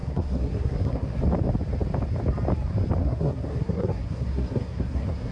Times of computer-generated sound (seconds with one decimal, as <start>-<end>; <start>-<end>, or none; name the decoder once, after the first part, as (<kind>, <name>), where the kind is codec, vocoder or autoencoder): 0.0-1.2 (codec, SNAC); 3.0-5.3